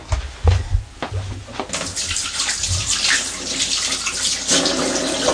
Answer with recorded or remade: recorded